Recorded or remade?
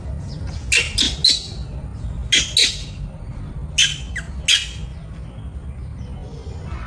recorded